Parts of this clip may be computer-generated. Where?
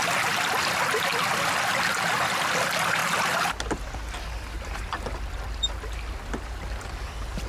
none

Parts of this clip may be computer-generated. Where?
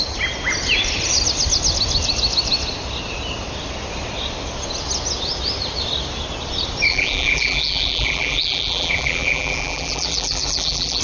6.9-11.0 (vocoder, BigVGAN v2)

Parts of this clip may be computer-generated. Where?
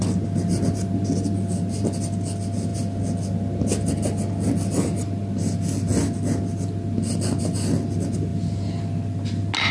none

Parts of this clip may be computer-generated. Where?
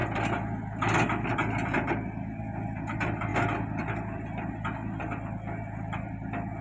none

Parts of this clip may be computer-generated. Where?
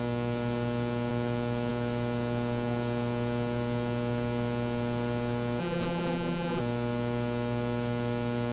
5.6-6.6 (vocoder, BigVGAN v2)